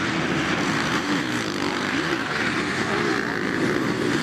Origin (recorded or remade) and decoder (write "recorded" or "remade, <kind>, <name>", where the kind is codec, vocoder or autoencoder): remade, vocoder, BigVGAN v2